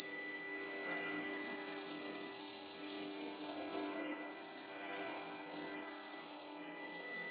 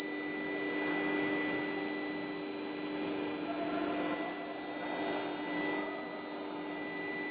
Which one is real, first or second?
second